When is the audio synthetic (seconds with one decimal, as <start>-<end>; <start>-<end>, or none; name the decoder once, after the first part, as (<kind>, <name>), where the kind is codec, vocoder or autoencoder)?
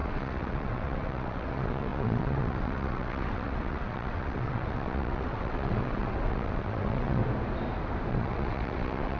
0.0-7.2 (vocoder, WaveNeXt); 8.1-9.2